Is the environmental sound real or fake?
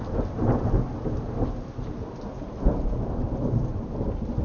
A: real